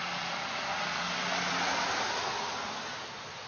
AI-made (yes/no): no